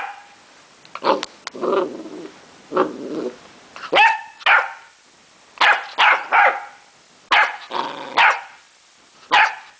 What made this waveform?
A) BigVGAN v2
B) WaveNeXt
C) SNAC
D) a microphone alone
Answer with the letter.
D